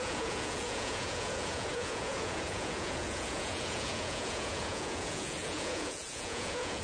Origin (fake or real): fake